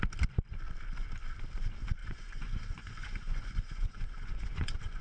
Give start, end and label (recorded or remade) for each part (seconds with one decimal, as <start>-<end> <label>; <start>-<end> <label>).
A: 0.0-2.0 recorded; 2.0-5.0 remade